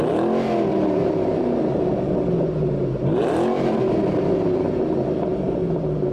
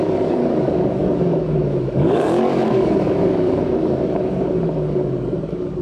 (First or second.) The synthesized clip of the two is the second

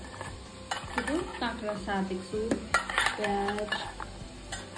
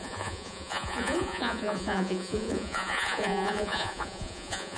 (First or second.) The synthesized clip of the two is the second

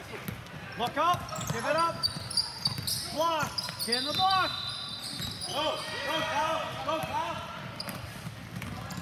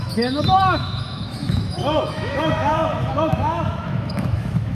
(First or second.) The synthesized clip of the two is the second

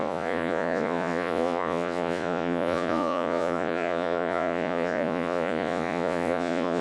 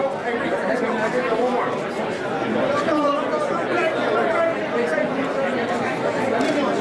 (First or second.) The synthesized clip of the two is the first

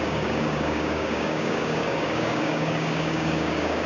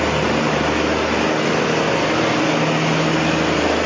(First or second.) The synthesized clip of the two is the first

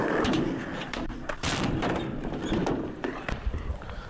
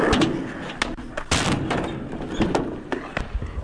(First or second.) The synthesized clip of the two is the first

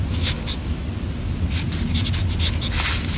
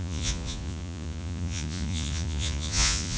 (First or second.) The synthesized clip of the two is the second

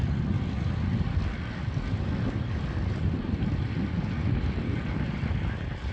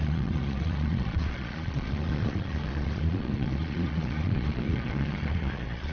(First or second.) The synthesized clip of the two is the second